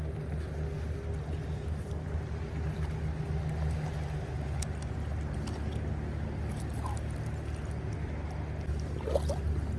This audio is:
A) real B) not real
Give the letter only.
A